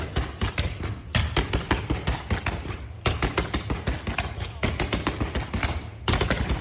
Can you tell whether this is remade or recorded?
recorded